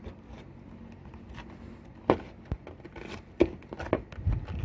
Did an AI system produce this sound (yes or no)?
no